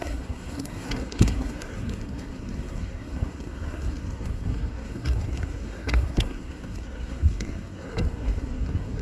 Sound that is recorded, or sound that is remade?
remade